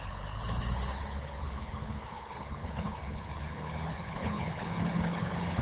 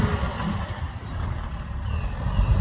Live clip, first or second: second